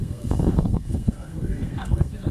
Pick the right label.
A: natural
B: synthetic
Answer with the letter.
B